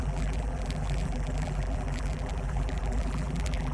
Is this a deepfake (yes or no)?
yes